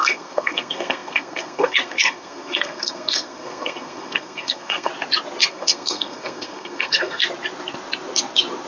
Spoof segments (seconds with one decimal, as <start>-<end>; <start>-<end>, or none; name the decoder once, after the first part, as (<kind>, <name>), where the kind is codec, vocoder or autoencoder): 0.0-4.9 (codec, SNAC); 5.5-7.2